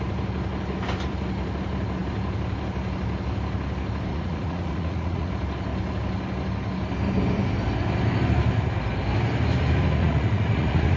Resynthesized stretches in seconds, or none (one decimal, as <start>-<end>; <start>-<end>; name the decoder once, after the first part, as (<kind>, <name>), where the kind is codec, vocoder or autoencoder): 4.1-5.3 (vocoder, Vocos); 10.0-11.0